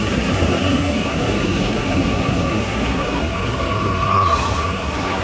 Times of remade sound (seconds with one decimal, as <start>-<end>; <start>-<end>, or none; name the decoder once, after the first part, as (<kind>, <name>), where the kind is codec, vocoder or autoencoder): 0.0-5.2 (codec, SNAC)